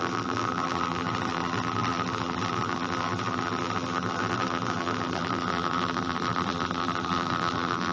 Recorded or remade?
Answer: remade